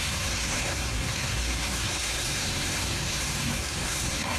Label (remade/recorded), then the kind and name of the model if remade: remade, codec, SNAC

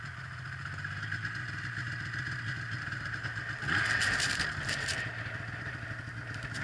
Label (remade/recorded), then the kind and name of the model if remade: recorded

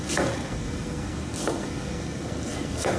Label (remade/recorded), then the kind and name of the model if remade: remade, codec, SNAC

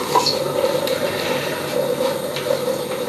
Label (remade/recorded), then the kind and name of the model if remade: recorded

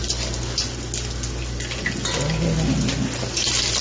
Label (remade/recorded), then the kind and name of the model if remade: recorded